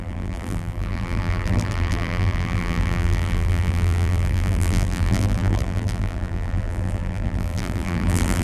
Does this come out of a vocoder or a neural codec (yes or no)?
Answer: yes